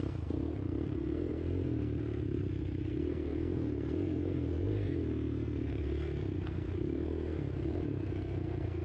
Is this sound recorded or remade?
remade